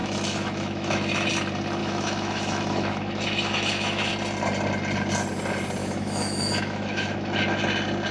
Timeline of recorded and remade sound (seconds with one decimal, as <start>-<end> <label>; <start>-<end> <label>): 0.0-1.3 remade; 1.3-1.8 recorded; 1.8-4.1 remade; 4.1-5.8 recorded; 5.8-7.6 remade; 7.6-8.1 recorded